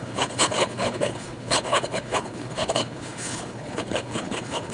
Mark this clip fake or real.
fake